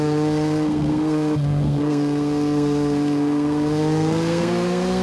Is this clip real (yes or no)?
no